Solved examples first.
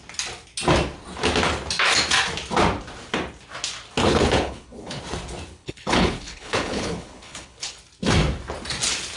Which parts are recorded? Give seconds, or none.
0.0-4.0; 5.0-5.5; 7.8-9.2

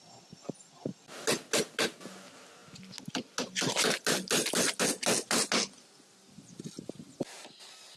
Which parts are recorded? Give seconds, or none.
0.0-8.0

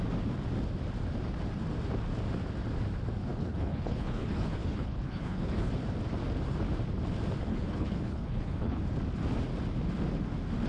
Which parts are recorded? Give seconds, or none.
0.0-3.2; 5.7-7.5; 8.8-10.7

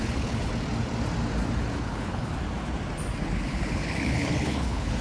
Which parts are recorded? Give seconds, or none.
0.5-1.8; 2.3-3.2

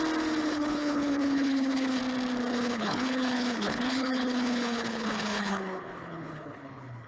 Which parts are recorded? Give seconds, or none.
0.0-0.5; 2.0-2.5

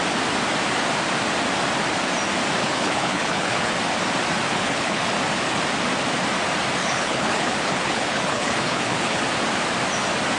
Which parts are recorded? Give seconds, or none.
0.0-2.6; 3.7-4.5; 5.0-6.8; 9.2-10.4